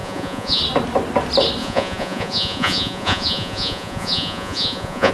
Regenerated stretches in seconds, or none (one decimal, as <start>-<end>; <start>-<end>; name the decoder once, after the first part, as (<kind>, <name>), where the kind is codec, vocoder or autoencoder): 0.0-0.6 (vocoder, Vocos); 1.6-5.1